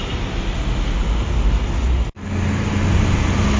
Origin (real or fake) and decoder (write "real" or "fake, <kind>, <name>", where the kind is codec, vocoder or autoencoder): real